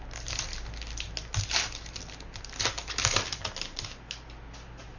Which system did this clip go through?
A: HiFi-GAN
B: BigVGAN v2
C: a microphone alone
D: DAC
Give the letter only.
C